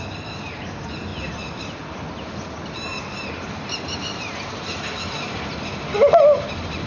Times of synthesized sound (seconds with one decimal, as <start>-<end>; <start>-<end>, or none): 0.0-1.1; 3.3-5.5

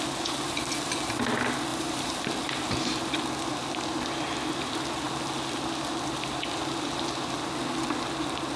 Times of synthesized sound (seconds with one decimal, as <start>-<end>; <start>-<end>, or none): 1.7-2.2

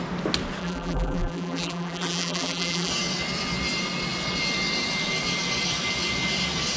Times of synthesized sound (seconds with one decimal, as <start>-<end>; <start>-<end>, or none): 0.6-2.9

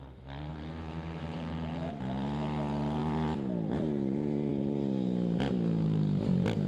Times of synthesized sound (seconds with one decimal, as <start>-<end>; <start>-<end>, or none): 0.5-2.0

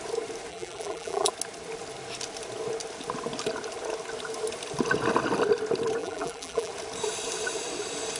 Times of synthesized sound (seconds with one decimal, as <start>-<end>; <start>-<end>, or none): 0.5-1.3; 6.0-6.7